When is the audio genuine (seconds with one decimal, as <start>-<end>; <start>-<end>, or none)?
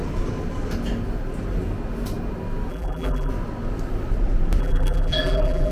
0.0-2.7; 3.3-4.6